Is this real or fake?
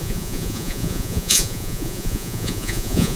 fake